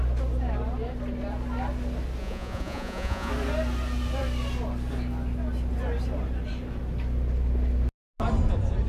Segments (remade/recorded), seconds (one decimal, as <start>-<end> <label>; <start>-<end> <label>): 0.0-2.2 recorded; 2.2-3.3 remade; 3.3-8.9 recorded

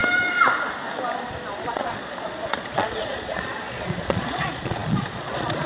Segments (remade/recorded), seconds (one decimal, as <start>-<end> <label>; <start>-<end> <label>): 0.0-1.7 recorded; 1.7-5.7 remade